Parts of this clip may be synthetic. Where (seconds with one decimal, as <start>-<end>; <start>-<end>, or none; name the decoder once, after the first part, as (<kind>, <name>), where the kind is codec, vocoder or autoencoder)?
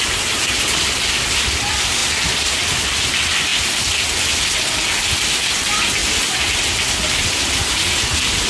none